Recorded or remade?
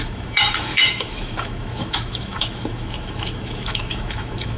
remade